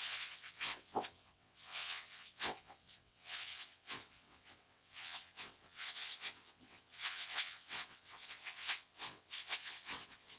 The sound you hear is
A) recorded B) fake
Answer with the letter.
B